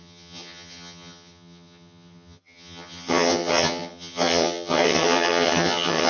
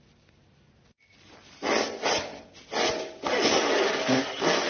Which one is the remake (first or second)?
first